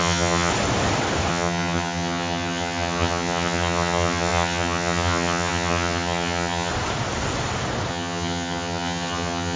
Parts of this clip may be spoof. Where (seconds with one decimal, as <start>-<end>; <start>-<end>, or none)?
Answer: 0.0-0.5; 1.3-6.7; 7.9-9.6

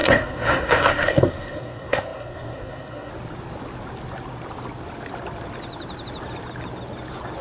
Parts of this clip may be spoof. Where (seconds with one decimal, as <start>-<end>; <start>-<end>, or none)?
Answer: 0.0-3.1

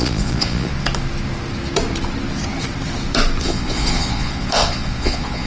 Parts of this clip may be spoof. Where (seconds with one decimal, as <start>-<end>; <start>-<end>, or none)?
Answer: 0.0-0.7; 3.4-5.5

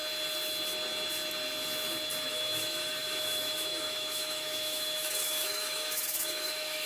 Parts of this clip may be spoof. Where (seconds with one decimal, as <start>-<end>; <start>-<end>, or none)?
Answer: 2.3-6.9

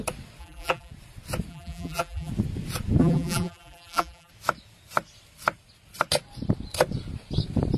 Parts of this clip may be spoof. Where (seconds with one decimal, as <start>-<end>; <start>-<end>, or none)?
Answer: 0.4-0.9; 1.5-2.3; 3.0-4.3

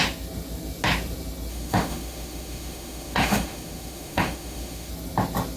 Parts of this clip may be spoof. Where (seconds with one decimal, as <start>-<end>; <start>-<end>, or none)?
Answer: 1.5-4.9

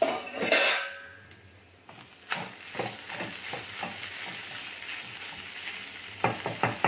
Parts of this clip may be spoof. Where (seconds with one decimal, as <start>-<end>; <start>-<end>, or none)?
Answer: none